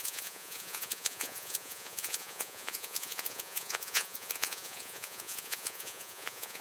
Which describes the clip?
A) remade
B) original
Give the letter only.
A